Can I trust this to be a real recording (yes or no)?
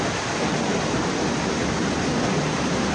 yes